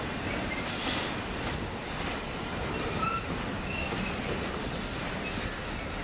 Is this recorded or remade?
recorded